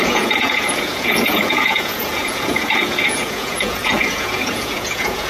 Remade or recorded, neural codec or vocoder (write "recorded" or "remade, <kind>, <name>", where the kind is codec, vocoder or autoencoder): remade, vocoder, Vocos